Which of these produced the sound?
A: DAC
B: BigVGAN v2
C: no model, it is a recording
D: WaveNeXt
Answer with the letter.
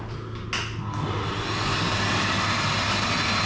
C